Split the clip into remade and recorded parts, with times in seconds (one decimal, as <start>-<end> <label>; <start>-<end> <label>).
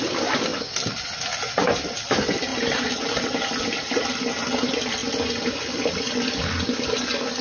0.0-7.4 recorded